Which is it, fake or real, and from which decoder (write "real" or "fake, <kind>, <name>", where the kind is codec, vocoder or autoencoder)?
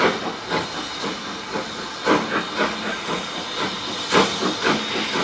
real